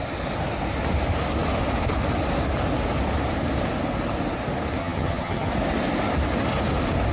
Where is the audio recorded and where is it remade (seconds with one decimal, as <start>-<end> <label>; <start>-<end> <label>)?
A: 0.0-4.8 recorded; 4.8-5.5 remade; 5.5-7.1 recorded